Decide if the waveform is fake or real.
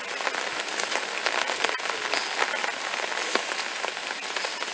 real